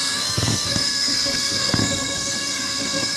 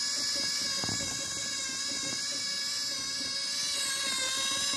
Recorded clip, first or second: second